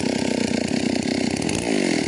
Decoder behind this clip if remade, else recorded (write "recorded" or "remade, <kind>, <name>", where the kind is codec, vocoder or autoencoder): recorded